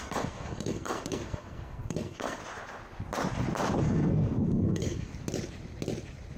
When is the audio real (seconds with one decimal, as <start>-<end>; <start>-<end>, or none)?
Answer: 2.4-3.8; 5.1-6.4